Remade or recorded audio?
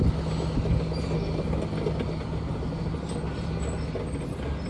recorded